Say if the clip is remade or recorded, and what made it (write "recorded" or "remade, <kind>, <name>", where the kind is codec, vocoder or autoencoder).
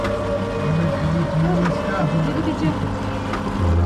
recorded